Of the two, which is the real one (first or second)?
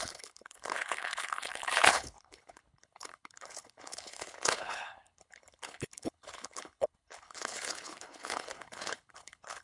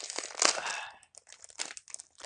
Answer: second